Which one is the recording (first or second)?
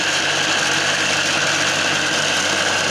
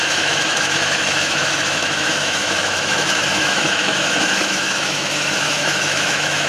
first